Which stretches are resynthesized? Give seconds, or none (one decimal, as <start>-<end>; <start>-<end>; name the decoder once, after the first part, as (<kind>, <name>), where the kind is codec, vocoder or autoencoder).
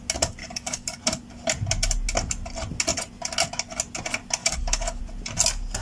0.4-1.0 (codec, DAC); 4.4-5.0